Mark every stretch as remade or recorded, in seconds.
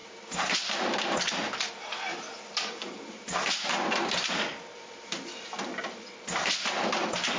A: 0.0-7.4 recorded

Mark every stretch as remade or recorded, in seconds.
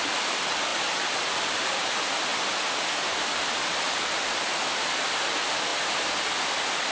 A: 0.0-2.3 remade; 2.3-3.1 recorded; 3.1-6.9 remade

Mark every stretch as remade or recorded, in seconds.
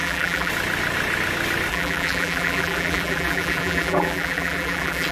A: 0.0-0.5 remade; 0.5-1.7 recorded; 1.7-5.1 remade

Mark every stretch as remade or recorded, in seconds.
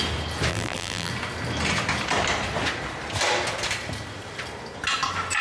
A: 0.0-0.5 recorded; 0.5-1.1 remade; 1.1-5.4 recorded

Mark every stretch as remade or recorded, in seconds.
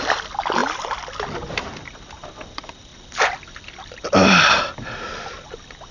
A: 0.0-5.9 recorded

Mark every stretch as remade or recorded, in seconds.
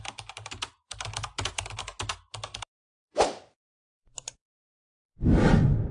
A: 0.0-2.5 recorded; 2.5-5.0 remade; 5.0-5.9 recorded